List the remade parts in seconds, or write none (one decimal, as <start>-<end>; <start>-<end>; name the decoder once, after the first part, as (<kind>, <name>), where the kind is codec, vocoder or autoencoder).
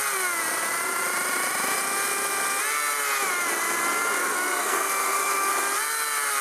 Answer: 4.2-5.5 (codec, SNAC)